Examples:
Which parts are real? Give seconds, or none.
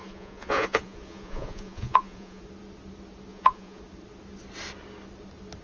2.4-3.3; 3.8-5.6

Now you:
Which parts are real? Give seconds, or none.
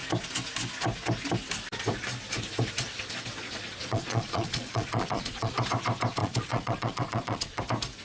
0.0-3.4; 5.6-6.2; 7.6-8.0